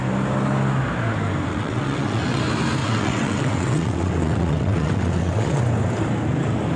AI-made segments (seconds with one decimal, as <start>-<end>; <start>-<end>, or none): 1.5-2.4; 2.8-5.6